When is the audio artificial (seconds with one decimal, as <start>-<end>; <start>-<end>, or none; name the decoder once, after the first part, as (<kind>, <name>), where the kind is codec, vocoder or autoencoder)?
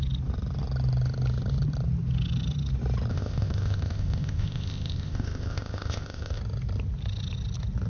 3.1-6.4 (codec, ZipCodec)